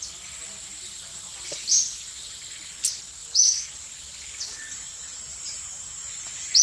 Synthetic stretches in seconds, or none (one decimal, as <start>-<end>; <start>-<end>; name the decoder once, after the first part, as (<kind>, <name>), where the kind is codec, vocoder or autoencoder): 3.2-3.7 (vocoder, BigVGAN v2)